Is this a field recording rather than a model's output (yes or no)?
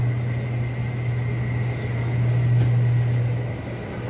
yes